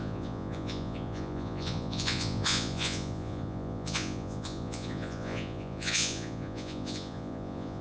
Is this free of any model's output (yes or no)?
no